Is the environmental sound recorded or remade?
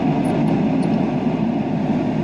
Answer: remade